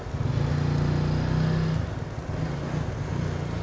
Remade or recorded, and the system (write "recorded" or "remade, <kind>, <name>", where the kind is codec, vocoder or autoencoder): recorded